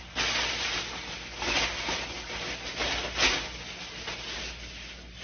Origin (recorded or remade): recorded